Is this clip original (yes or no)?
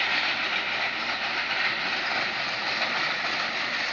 yes